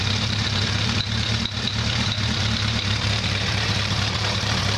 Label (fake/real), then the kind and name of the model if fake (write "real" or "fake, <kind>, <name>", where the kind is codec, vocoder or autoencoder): fake, vocoder, BigVGAN v2